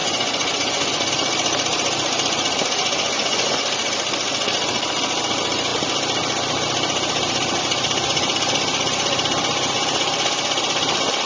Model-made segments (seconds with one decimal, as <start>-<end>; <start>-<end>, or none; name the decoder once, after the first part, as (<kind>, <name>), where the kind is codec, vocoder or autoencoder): 0.0-1.1 (vocoder, Vocos); 2.8-3.6